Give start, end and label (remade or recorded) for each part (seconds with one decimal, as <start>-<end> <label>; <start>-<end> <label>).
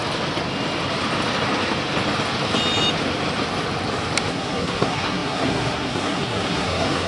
0.0-4.3 recorded; 4.3-7.1 remade